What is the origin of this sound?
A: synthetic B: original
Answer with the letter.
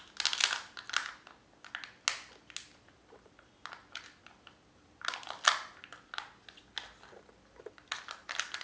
B